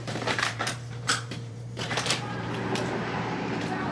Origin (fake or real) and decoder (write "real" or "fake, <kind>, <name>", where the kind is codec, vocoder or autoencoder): fake, vocoder, BigVGAN v2